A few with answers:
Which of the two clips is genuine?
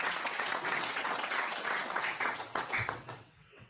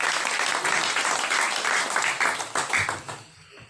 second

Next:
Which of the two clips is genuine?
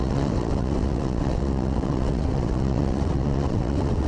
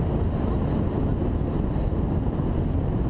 second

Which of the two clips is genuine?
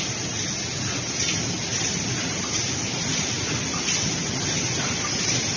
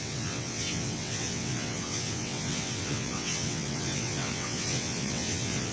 first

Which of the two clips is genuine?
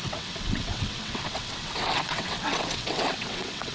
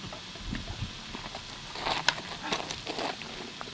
second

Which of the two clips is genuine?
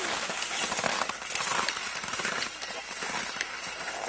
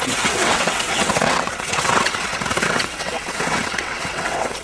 first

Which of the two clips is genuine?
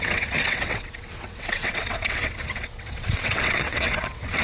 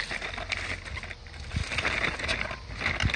second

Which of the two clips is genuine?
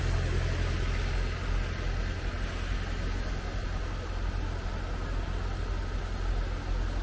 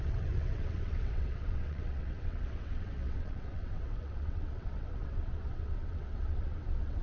first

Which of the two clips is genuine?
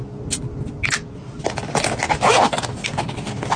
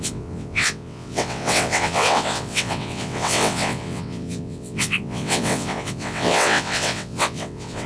first